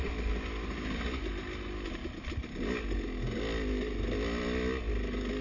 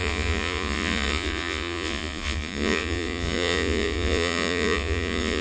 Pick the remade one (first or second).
second